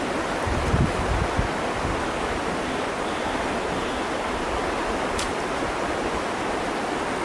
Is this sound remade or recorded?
recorded